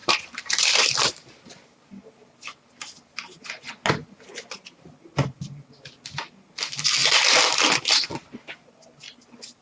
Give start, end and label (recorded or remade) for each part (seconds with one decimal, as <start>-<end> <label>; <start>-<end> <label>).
0.0-0.9 remade; 0.9-4.0 recorded; 4.0-5.9 remade; 5.9-9.6 recorded